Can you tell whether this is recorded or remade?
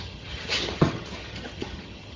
remade